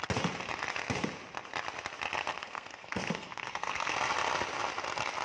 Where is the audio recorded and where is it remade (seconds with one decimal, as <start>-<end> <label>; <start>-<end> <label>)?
0.0-2.3 recorded; 2.3-3.9 remade; 3.9-5.2 recorded